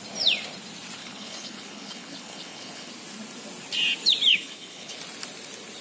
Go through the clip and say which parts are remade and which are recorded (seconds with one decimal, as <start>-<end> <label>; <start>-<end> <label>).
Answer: 0.0-1.0 recorded; 1.0-2.9 remade; 2.9-4.3 recorded; 4.3-5.0 remade; 5.0-5.8 recorded